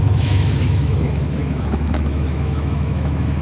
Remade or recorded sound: remade